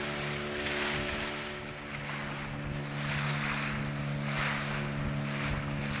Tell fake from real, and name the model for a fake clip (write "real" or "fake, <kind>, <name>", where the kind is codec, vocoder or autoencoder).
real